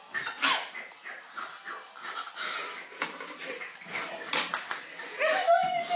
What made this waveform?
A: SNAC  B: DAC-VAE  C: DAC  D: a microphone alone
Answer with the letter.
D